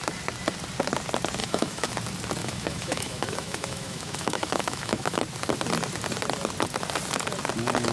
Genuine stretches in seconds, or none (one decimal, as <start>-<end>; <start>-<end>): 0.0-1.4; 1.9-2.4; 5.2-7.9